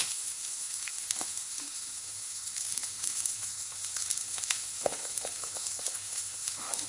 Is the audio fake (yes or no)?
yes